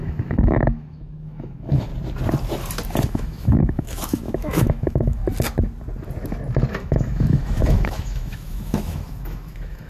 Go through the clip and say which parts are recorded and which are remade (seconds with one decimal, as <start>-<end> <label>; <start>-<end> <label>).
0.0-1.9 remade; 1.9-3.0 recorded; 3.0-5.2 remade; 5.2-6.7 recorded; 6.7-9.9 remade